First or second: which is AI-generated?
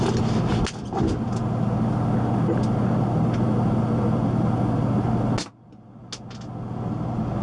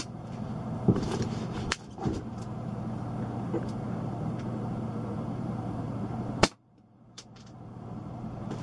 second